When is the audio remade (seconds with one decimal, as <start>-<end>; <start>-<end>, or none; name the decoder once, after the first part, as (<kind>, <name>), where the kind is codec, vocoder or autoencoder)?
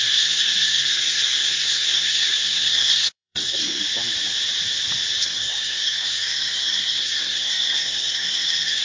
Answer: 0.0-3.8 (codec, SNAC); 5.2-8.8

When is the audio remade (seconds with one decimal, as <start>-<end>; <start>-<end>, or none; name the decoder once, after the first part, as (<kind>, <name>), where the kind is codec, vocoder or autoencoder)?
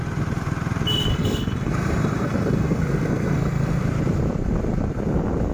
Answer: 1.1-3.8 (codec, SNAC)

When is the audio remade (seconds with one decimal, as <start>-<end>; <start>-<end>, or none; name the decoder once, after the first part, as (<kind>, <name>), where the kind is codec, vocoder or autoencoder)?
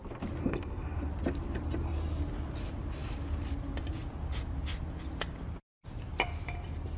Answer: 0.4-1.1 (codec, SNAC)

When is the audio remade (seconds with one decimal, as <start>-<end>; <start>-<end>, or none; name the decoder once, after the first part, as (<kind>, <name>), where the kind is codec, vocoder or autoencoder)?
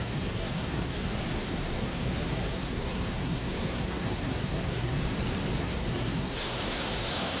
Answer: 0.0-5.0 (codec, SNAC); 5.6-7.4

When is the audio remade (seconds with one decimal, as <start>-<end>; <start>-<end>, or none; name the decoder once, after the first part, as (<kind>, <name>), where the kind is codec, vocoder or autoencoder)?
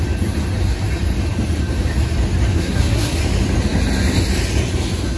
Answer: 2.5-3.2 (codec, SNAC)